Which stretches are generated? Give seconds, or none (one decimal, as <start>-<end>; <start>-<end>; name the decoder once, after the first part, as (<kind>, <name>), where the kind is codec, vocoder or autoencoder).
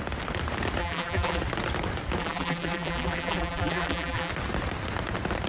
0.8-1.4 (vocoder, BigVGAN v2); 2.2-4.3